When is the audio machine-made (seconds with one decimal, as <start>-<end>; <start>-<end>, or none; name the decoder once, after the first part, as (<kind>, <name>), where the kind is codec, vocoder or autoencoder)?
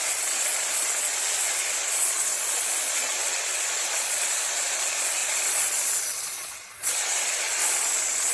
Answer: 0.0-2.3 (vocoder, Vocos); 2.9-7.6